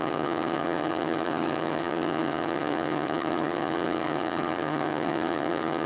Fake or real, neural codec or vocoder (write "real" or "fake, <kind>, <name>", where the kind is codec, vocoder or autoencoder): fake, vocoder, HiFi-GAN